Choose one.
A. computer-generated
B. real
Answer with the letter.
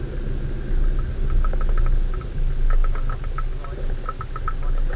B